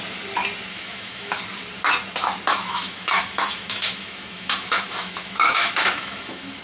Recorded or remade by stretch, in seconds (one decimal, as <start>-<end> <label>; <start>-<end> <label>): 0.0-0.7 recorded; 0.7-1.4 remade; 1.4-2.5 recorded; 2.5-6.6 remade